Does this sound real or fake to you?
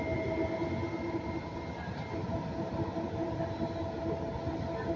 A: real